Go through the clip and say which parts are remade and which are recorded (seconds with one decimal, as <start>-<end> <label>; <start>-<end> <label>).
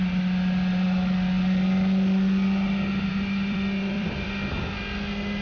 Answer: 0.0-3.1 recorded; 3.1-4.3 remade; 4.3-5.4 recorded